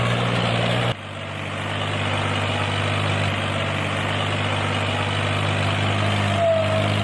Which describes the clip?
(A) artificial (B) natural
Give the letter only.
B